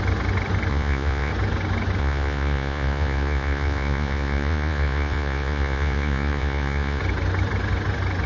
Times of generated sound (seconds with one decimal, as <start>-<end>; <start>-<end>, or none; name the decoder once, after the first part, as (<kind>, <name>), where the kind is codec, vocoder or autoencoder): 0.7-1.3 (vocoder, Vocos); 2.0-7.0